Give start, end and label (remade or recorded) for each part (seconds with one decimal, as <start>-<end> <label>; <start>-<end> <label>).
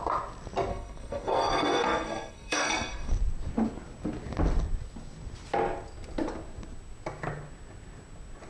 0.0-0.7 recorded; 0.7-3.1 remade; 3.1-8.5 recorded